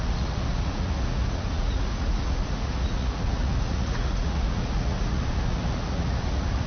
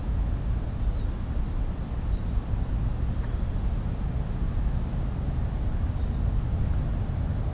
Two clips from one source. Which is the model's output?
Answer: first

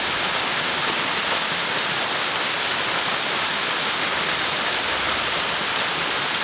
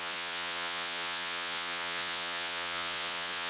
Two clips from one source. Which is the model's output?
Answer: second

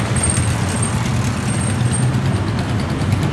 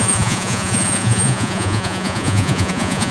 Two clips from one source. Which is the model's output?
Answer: second